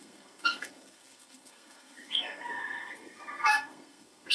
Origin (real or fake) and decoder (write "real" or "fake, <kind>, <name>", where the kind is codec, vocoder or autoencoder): fake, codec, SNAC